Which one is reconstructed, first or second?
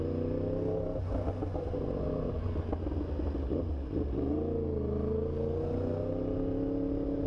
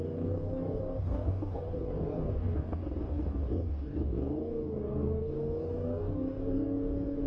second